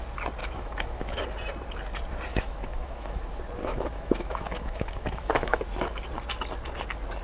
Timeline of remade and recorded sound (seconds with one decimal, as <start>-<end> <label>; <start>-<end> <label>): 0.0-0.4 recorded; 0.4-1.2 remade; 1.2-2.3 recorded; 2.3-3.2 remade; 3.2-3.6 recorded; 3.6-5.6 remade; 5.6-7.2 recorded